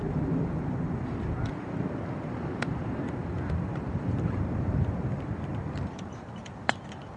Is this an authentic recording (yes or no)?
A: no